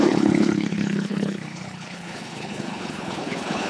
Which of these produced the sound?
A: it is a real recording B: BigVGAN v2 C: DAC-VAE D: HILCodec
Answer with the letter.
D